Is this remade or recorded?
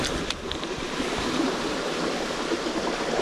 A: recorded